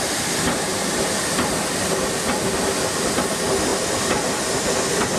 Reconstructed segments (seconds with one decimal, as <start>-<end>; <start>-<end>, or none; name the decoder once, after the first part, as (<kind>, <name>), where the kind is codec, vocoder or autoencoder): none